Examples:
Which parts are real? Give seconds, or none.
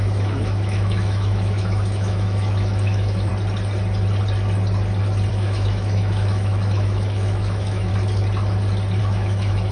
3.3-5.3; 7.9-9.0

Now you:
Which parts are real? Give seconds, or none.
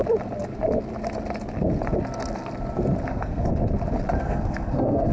0.0-3.1; 3.5-4.2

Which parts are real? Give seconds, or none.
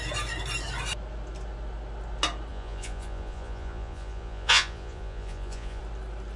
0.0-2.5; 5.8-6.4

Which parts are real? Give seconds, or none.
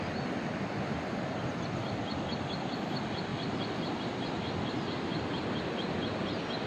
0.0-6.7